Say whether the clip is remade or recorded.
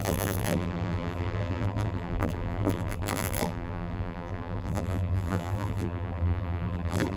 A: remade